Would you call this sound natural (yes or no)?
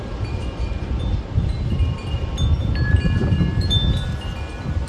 yes